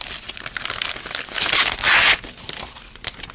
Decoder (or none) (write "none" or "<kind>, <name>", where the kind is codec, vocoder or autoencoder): none